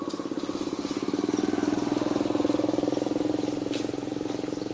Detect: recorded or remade recorded